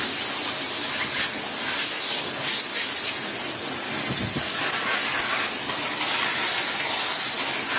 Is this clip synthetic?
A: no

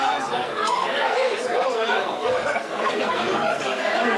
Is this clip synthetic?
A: yes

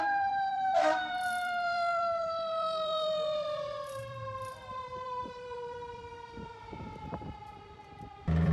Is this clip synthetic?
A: yes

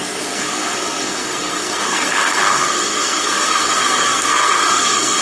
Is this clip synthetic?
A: yes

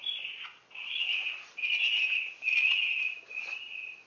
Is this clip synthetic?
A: no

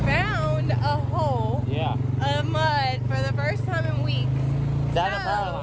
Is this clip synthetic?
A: no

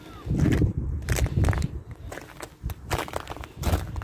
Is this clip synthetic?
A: no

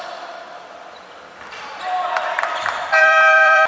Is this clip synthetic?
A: yes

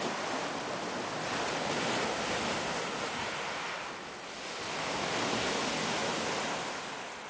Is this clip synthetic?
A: no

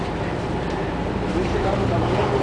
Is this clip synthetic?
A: yes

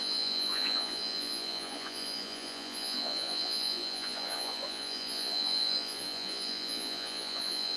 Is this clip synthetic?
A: yes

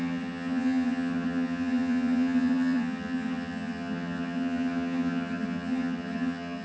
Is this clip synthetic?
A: yes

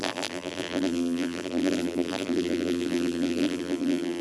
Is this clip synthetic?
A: yes